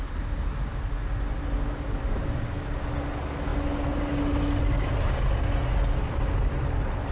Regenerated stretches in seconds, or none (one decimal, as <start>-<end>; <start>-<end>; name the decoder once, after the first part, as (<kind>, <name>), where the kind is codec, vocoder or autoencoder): none